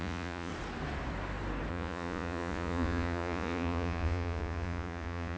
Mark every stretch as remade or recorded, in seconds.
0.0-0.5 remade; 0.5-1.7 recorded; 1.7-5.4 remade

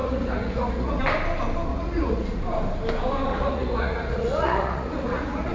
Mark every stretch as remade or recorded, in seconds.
0.0-1.0 remade; 1.0-1.7 recorded; 1.7-2.4 remade; 2.4-3.3 recorded; 3.3-5.5 remade

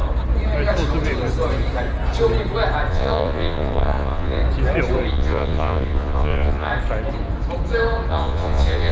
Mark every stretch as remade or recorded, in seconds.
0.0-2.9 recorded; 2.9-4.4 remade; 4.4-5.1 recorded; 5.1-6.7 remade; 6.7-8.1 recorded; 8.1-8.9 remade

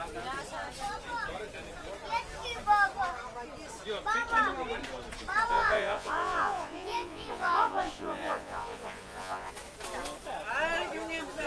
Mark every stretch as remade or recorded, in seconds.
0.0-5.5 recorded; 5.5-9.5 remade; 9.5-11.5 recorded

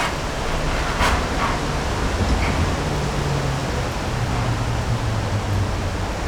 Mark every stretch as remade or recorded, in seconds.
0.0-6.3 recorded

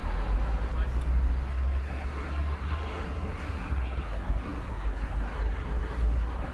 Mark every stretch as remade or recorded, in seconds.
0.0-1.5 recorded; 1.5-6.5 remade

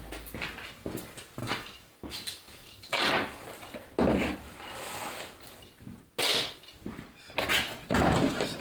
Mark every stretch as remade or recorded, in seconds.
0.0-1.4 recorded; 1.4-3.1 remade; 3.1-8.6 recorded